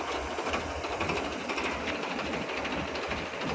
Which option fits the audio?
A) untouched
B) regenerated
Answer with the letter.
B